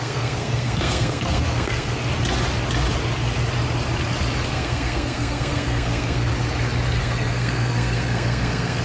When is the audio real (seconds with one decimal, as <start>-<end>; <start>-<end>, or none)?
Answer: 2.1-4.5; 6.3-7.0